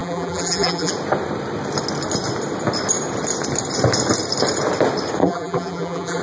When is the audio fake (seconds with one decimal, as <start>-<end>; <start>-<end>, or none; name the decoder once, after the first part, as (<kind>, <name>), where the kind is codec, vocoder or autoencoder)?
0.0-0.9 (vocoder, BigVGAN v2); 5.2-6.2